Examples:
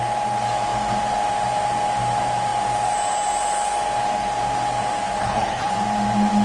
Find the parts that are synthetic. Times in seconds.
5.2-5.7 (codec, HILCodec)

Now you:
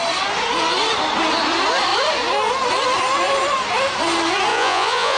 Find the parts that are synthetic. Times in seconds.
4.5-5.2 (vocoder, Vocos)

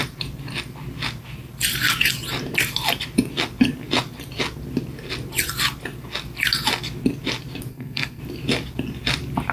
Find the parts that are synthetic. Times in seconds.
7.7-8.2 (codec, SNAC)

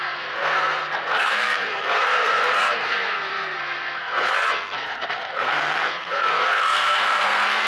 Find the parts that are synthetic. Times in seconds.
0.0-7.7 (codec, SNAC)

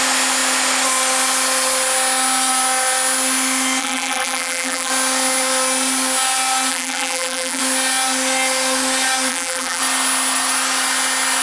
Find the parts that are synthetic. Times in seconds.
3.8-4.9 (vocoder, BigVGAN v2); 6.7-7.6; 9.3-9.8

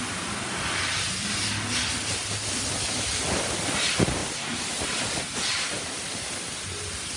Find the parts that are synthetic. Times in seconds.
4.2-4.7 (vocoder, BigVGAN v2)

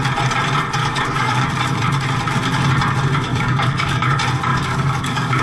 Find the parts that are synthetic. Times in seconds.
0.8-1.5 (codec, DAC); 3.3-4.1; 4.5-5.4

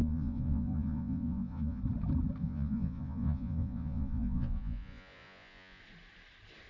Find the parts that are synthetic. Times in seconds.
0.0-1.8 (vocoder, Vocos); 2.4-5.8